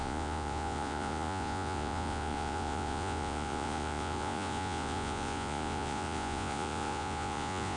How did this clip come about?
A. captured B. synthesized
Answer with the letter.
B